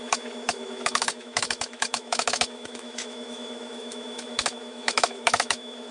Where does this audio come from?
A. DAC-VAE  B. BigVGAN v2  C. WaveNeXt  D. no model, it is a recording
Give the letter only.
A